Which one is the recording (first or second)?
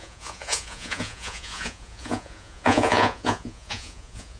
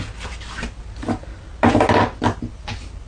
second